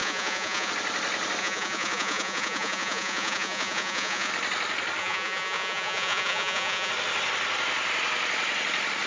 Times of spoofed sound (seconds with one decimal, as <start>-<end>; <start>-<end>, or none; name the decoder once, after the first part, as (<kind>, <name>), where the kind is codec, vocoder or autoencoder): 0.0-0.7 (vocoder, Vocos); 1.4-4.3; 5.0-6.9